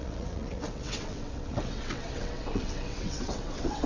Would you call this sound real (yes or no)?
no